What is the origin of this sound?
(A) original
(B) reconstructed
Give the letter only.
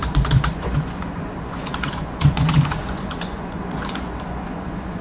B